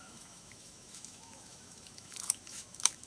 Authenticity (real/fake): fake